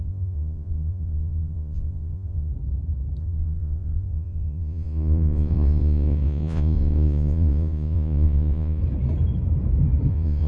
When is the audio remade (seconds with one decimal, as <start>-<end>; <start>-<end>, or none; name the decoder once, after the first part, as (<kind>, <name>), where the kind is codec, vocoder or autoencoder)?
0.0-2.5 (vocoder, Vocos); 3.2-8.8; 10.1-10.5